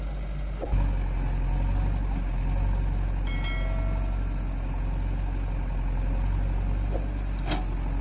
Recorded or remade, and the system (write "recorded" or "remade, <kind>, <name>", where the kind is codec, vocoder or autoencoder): recorded